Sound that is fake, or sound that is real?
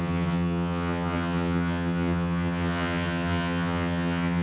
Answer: fake